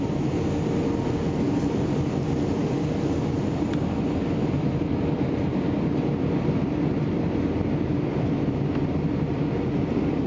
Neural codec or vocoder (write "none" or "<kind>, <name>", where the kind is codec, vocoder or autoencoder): none